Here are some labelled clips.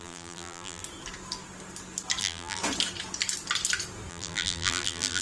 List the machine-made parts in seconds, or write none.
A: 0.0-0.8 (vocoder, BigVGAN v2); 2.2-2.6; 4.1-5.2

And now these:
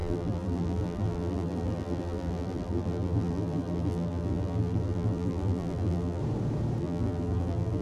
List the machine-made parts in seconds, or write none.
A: 0.0-6.2 (vocoder, BigVGAN v2); 6.8-7.8

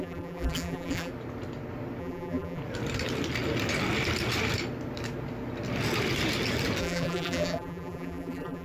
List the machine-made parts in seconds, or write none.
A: 0.0-1.1 (vocoder, BigVGAN v2); 2.0-2.6; 6.8-8.6

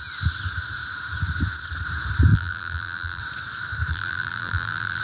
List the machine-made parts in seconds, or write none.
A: 2.3-3.2 (vocoder, BigVGAN v2); 3.9-5.0

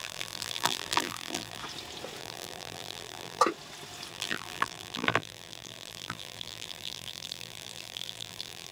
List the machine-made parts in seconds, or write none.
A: 0.0-1.6 (vocoder, BigVGAN v2); 2.2-3.4; 4.1-8.7

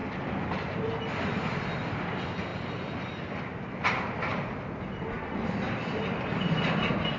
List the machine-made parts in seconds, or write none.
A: 2.5-3.4 (vocoder, BigVGAN v2)

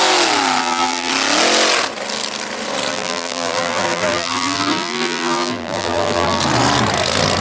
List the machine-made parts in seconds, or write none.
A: 0.6-1.1 (vocoder, BigVGAN v2); 2.9-6.4